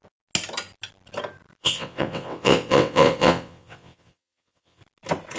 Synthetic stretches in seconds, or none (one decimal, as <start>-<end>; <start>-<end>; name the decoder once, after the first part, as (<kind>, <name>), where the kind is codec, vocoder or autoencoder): 1.6-4.8 (vocoder, WaveNeXt)